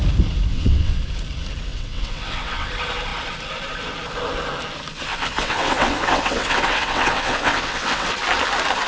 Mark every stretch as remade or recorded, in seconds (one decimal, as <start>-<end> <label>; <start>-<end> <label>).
0.0-0.5 recorded; 0.5-1.0 remade; 1.0-1.7 recorded; 1.7-2.7 remade; 2.7-5.1 recorded; 5.1-8.1 remade; 8.1-8.9 recorded